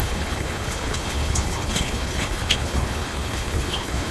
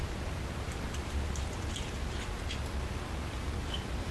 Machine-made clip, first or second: first